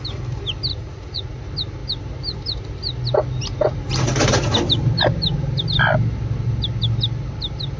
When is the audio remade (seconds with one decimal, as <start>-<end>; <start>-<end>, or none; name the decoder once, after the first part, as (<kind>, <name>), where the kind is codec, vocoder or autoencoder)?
0.7-1.4 (vocoder, Vocos)